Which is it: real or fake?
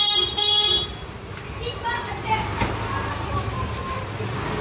real